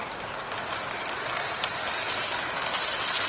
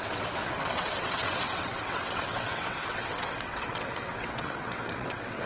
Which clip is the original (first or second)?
first